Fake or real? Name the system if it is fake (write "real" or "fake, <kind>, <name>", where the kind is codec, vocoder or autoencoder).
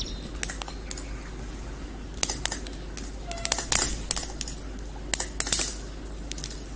real